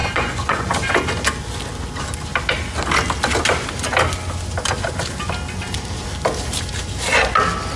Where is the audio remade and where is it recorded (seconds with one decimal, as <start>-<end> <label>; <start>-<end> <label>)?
0.0-0.7 remade; 0.7-7.8 recorded